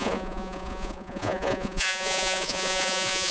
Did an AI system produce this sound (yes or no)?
yes